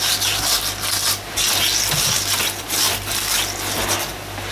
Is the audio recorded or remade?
recorded